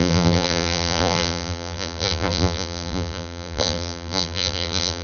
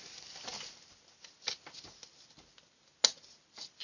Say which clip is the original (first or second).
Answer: second